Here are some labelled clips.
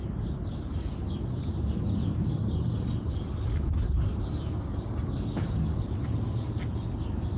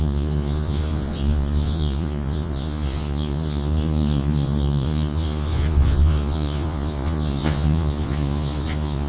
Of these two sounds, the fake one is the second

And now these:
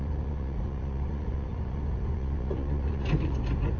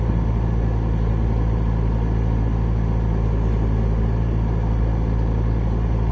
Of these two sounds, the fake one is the first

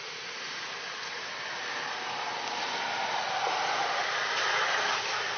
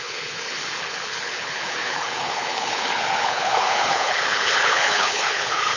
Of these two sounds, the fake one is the second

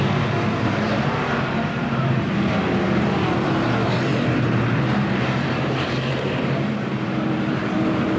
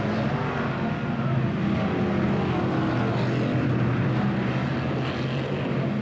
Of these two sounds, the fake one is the first